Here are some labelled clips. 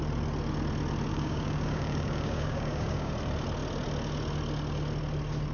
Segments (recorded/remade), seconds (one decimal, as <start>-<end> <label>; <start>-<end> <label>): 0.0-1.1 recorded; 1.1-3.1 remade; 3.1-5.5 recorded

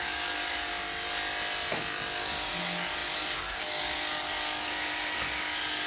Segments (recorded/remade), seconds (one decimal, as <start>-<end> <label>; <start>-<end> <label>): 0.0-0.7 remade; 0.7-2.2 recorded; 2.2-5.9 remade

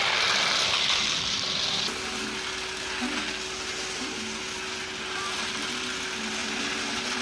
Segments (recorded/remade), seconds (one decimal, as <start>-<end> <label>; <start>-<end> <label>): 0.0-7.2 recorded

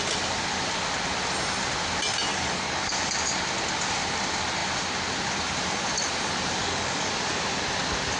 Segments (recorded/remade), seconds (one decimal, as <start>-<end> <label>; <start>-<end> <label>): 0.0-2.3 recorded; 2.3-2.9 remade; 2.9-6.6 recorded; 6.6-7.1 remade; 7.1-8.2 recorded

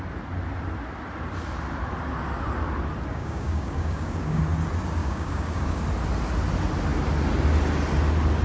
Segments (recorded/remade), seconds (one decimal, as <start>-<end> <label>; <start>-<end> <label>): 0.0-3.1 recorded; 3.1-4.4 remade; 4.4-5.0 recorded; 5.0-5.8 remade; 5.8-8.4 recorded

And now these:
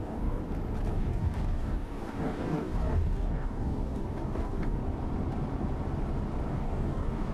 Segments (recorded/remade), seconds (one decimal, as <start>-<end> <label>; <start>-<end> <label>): 0.0-0.4 remade; 0.4-0.9 recorded; 0.9-4.8 remade; 4.8-6.5 recorded; 6.5-7.3 remade

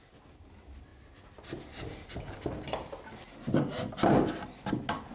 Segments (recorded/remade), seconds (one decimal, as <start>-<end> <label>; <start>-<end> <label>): 0.0-5.1 recorded

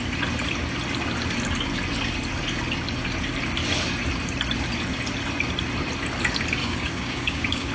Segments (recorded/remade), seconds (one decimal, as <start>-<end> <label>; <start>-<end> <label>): 0.0-6.6 recorded; 6.6-7.7 remade